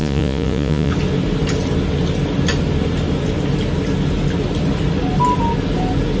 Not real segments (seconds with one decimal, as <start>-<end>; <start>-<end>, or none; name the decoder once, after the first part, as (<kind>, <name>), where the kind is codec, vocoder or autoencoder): 0.0-0.9 (vocoder, Vocos)